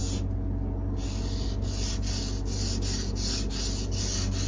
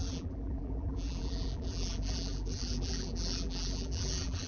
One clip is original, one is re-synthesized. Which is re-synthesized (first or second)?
second